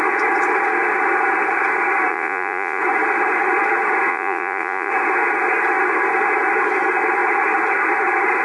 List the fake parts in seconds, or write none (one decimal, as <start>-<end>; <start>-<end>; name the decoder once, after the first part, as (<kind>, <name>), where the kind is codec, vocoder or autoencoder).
2.1-2.8 (vocoder, Vocos); 4.1-4.9

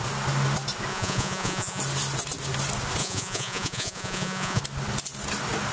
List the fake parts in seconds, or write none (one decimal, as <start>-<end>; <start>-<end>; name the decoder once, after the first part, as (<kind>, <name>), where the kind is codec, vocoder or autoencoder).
0.9-1.8 (vocoder, Vocos); 3.0-4.6

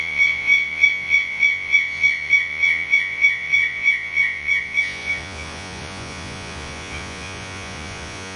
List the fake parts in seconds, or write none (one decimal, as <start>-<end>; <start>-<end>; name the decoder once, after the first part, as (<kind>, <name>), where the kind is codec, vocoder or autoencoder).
0.0-8.4 (vocoder, Vocos)

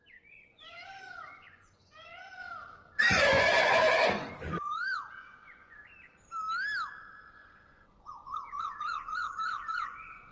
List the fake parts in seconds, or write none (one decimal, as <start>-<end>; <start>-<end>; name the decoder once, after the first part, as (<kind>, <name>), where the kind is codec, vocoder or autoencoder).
0.0-2.4 (vocoder, Vocos); 3.0-5.8; 7.0-10.3

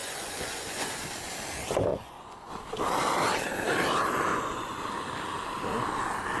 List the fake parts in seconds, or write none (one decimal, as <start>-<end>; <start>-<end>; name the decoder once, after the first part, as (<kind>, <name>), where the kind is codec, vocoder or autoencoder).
0.0-1.0 (vocoder, Vocos); 1.9-2.5; 4.3-4.8

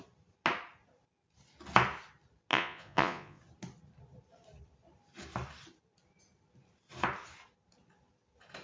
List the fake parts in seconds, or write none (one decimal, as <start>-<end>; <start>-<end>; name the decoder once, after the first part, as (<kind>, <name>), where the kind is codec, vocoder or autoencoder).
2.5-3.4 (vocoder, Vocos)